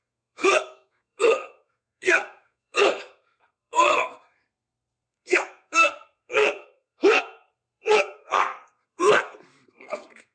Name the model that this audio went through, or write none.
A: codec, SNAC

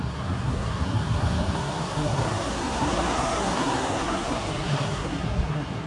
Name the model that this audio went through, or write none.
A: codec, SNAC